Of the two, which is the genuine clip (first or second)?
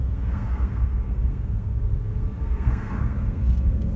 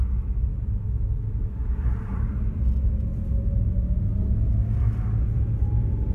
second